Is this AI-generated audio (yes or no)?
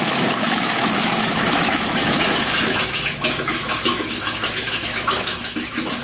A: yes